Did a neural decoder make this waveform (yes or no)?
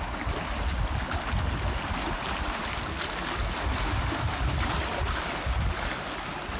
no